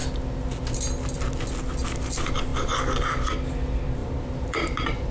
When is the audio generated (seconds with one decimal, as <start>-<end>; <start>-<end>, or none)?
4.0-5.1